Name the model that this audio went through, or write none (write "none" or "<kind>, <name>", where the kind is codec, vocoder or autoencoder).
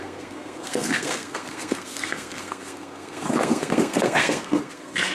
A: codec, SNAC